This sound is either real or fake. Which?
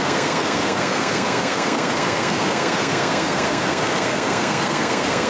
fake